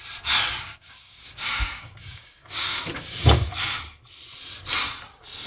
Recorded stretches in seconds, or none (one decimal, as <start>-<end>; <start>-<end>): 0.0-0.5; 3.8-5.5